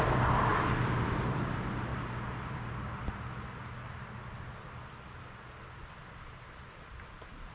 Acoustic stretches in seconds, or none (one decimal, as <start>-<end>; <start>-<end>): 0.0-0.5; 1.5-1.9; 3.0-7.5